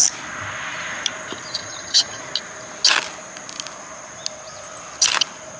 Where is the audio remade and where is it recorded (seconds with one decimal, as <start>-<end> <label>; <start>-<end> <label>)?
0.0-1.6 recorded; 1.6-2.2 remade; 2.2-5.6 recorded